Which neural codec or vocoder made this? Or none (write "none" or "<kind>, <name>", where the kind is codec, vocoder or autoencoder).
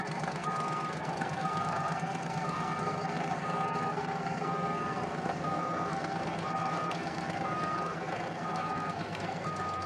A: codec, SNAC